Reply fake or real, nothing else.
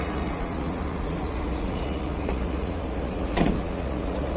fake